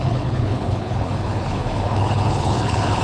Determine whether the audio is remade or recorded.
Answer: remade